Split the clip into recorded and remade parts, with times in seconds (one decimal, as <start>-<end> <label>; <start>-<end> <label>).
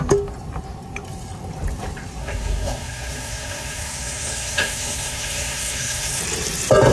0.0-2.2 recorded; 2.2-6.2 remade; 6.2-6.9 recorded